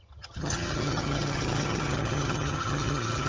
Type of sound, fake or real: fake